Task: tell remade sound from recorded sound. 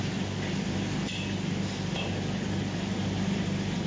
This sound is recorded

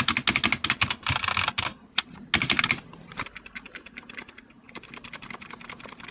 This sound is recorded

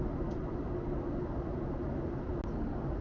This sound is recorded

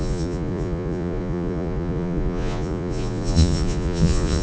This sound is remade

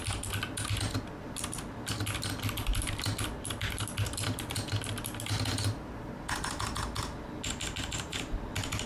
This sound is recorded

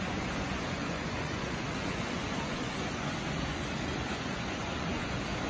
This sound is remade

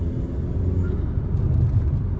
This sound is recorded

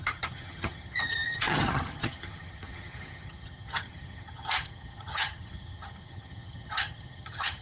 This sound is remade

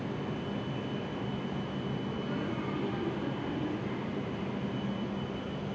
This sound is recorded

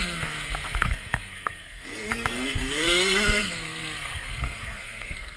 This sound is remade